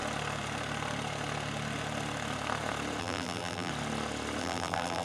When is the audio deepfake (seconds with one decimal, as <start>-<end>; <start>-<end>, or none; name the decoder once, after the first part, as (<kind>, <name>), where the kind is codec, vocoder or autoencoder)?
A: 3.0-3.7 (vocoder, BigVGAN v2); 4.4-5.0